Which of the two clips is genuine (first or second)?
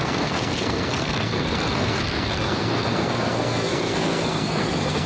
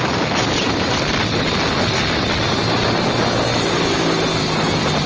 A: second